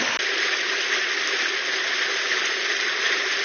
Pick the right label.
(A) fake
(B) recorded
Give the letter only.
B